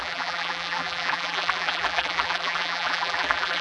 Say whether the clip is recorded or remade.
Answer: remade